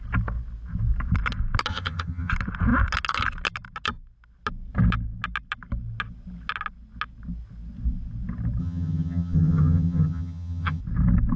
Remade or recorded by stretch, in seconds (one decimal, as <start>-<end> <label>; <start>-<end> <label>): 0.0-1.7 recorded; 1.7-2.3 remade; 2.3-8.6 recorded; 8.6-10.8 remade; 10.8-11.4 recorded